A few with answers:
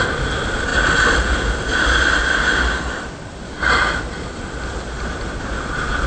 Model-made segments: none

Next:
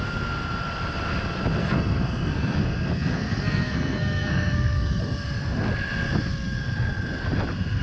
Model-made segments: 1.6-5.0 (codec, SNAC)

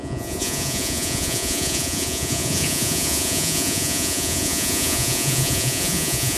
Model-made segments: 0.0-6.4 (vocoder, Vocos)

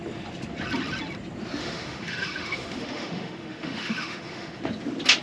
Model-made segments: 1.6-4.6 (autoencoder, DAC-VAE)